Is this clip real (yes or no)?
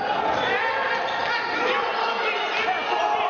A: yes